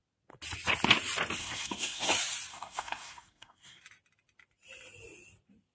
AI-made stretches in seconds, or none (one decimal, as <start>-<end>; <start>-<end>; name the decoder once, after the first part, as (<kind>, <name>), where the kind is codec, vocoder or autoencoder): 1.4-2.1 (codec, SNAC); 2.5-3.8